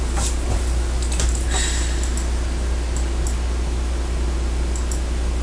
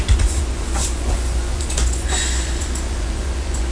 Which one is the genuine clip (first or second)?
first